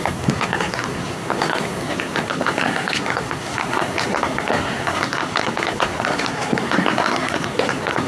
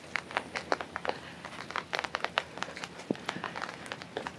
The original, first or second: second